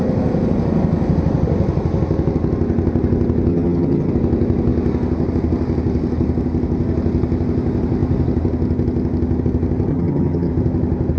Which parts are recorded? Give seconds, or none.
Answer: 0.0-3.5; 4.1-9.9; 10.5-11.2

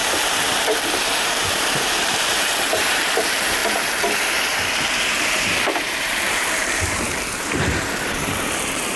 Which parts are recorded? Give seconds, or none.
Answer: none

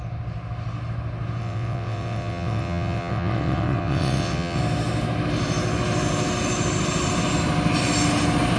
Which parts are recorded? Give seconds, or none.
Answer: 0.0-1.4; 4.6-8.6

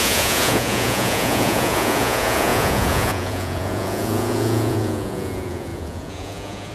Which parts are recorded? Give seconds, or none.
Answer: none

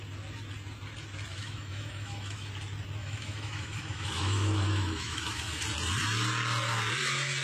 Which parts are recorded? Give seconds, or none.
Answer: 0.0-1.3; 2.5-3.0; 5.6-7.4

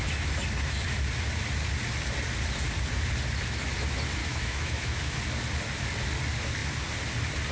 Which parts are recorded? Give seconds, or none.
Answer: 0.0-4.2; 5.2-7.5

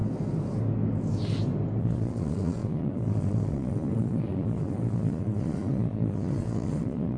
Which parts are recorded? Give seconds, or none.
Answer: 0.0-1.8

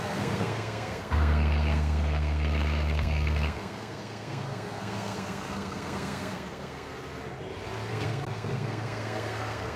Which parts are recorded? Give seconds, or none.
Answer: 6.9-7.9